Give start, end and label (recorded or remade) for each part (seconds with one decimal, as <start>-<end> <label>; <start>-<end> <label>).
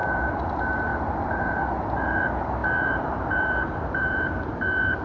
0.0-5.0 remade